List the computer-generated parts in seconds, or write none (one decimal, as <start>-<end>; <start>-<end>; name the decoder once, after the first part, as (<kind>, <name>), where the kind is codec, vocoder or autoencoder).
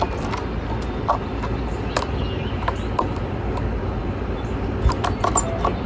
none